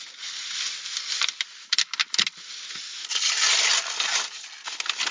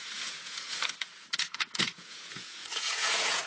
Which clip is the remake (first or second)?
second